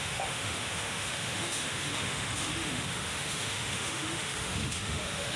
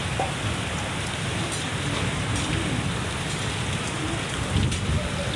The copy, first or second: first